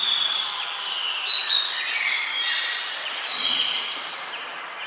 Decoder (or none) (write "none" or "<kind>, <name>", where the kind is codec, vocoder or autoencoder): vocoder, BigVGAN v2